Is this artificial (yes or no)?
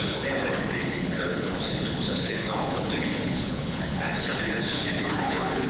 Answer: yes